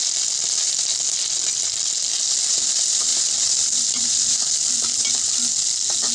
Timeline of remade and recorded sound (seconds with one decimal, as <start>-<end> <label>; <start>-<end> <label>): 0.0-3.1 recorded; 3.1-5.6 remade; 5.6-6.1 recorded

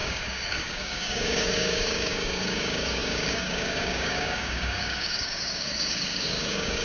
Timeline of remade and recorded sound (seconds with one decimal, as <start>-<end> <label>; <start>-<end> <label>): 0.0-6.8 remade

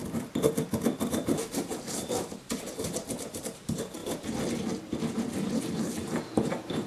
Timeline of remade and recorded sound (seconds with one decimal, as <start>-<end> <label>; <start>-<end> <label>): 0.0-4.0 remade; 4.0-5.6 recorded; 5.6-6.9 remade

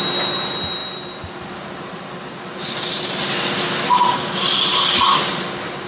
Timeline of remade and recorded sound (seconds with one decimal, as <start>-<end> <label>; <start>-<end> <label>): 0.0-5.9 recorded

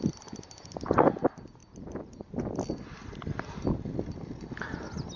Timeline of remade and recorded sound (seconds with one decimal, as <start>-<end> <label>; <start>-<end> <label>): 0.0-5.2 recorded

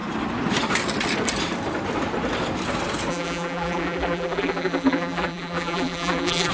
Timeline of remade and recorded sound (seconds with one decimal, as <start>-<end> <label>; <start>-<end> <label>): 0.0-3.1 recorded; 3.1-6.5 remade

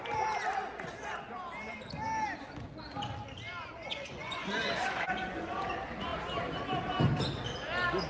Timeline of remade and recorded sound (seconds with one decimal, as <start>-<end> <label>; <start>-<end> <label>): 0.0-3.8 recorded; 3.8-5.5 remade; 5.5-8.1 recorded

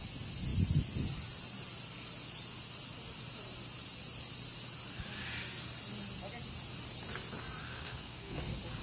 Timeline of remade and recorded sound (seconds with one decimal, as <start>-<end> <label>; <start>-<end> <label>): 0.0-7.6 recorded; 7.6-8.4 remade; 8.4-8.8 recorded